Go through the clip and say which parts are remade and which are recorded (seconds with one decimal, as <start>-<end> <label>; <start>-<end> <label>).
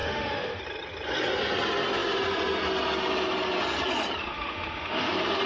0.0-0.6 remade; 0.6-4.2 recorded; 4.2-5.1 remade; 5.1-5.5 recorded